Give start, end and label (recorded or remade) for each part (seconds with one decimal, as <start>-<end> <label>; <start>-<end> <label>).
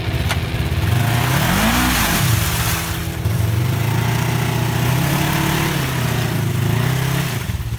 0.0-3.0 recorded; 3.0-3.6 remade; 3.6-7.8 recorded